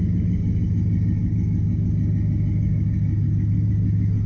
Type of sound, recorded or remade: recorded